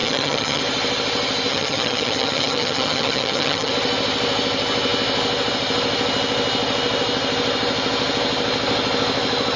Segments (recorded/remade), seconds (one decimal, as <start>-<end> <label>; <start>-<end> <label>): 0.0-0.6 remade; 0.6-1.5 recorded; 1.5-3.7 remade; 3.7-9.6 recorded